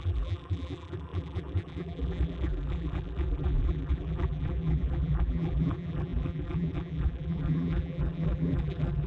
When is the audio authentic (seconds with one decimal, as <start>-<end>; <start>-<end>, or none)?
none